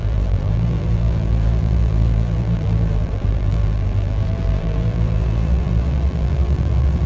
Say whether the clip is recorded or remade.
remade